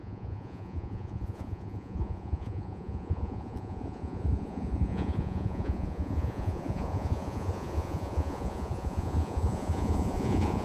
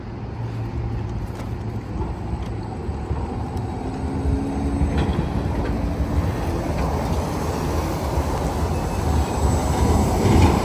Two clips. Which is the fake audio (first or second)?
first